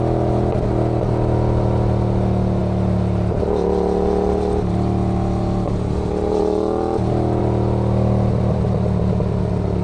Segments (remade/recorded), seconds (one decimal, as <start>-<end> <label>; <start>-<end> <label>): 0.0-9.8 recorded